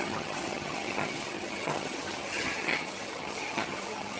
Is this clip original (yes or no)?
no